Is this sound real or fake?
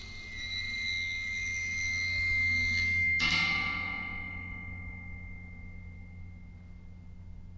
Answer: real